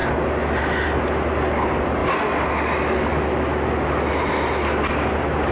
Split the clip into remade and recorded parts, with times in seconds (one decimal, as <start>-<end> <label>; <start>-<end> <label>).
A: 0.0-5.5 recorded